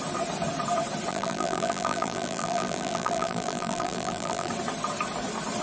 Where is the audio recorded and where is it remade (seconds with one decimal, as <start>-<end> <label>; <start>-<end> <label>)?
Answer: 0.0-1.1 recorded; 1.1-4.5 remade; 4.5-5.6 recorded

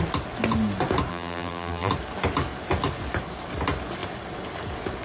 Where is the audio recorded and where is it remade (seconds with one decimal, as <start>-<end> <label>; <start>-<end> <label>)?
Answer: 0.0-1.1 recorded; 1.1-1.9 remade; 1.9-5.0 recorded

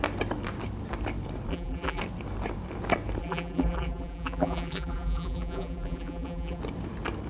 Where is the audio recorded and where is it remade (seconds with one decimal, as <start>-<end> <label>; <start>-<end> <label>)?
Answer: 0.0-1.5 recorded; 1.5-2.0 remade; 2.0-3.2 recorded; 3.2-6.6 remade; 6.6-7.3 recorded

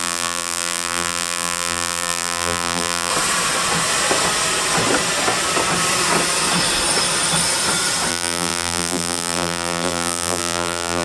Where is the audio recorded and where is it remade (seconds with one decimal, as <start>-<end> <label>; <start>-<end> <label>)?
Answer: 0.0-3.1 remade; 3.1-8.1 recorded; 8.1-11.0 remade

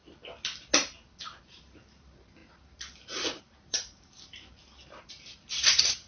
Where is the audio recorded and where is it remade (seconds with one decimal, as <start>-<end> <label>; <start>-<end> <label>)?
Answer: 0.0-1.4 recorded; 1.4-6.1 remade